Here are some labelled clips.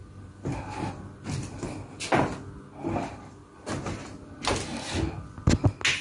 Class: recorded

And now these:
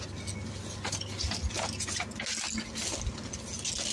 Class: recorded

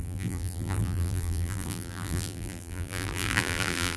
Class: remade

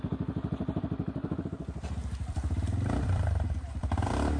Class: remade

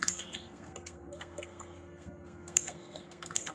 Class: remade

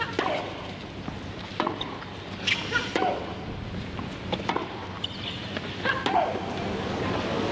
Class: recorded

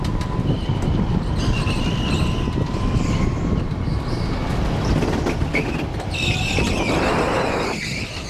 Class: recorded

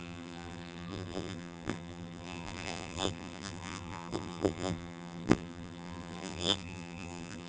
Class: remade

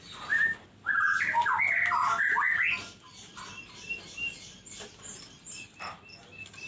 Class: recorded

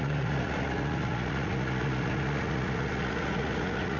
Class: remade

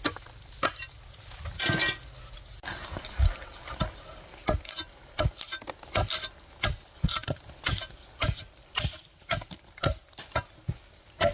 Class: recorded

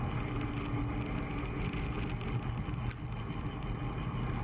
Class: recorded